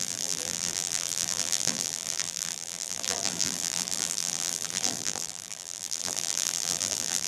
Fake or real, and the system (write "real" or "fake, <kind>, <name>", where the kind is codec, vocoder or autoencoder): fake, vocoder, BigVGAN v2